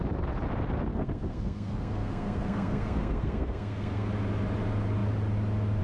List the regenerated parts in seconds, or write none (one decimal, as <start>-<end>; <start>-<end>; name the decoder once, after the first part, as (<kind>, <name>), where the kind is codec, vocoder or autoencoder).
0.9-4.1 (codec, SNAC)